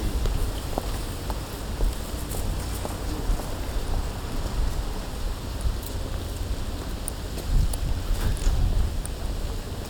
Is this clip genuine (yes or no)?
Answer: yes